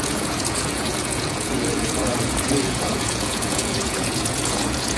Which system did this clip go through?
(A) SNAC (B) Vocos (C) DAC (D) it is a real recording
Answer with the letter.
B